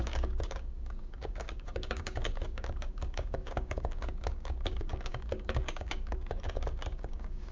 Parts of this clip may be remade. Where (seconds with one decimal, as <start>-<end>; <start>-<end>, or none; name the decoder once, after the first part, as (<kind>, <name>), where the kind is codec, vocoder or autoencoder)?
0.0-7.5 (codec, DAC)